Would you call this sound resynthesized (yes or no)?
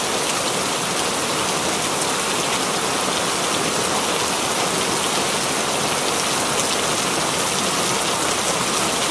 no